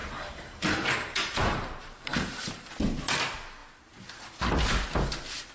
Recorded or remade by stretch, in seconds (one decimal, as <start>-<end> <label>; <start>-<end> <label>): 0.0-2.7 remade; 2.7-5.5 recorded